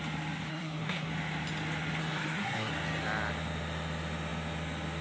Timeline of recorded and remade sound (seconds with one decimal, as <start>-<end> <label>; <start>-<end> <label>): 0.0-0.5 recorded; 0.5-1.1 remade; 1.1-2.0 recorded; 2.0-2.7 remade; 2.7-5.0 recorded